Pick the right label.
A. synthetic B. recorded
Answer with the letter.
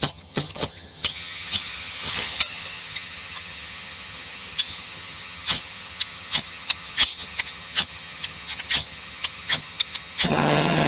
A